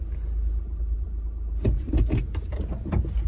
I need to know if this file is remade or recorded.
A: recorded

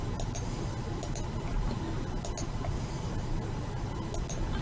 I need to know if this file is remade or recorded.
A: recorded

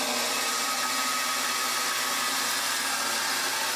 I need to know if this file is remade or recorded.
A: recorded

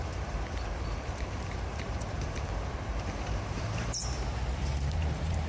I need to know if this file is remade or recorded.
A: remade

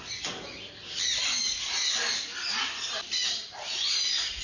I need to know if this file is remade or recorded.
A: recorded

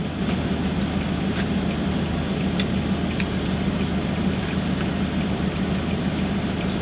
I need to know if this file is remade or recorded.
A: recorded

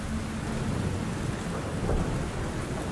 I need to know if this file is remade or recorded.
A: recorded